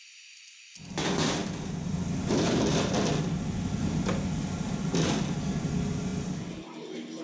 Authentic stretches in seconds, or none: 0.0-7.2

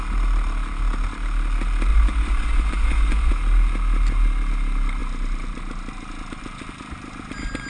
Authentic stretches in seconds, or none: 0.0-1.9; 3.3-7.7

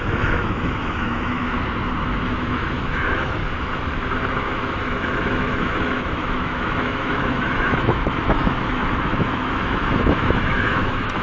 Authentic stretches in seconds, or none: 1.4-2.0; 3.4-4.4

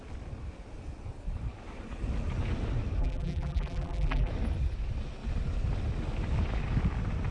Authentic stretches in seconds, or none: 0.0-3.0; 4.3-7.3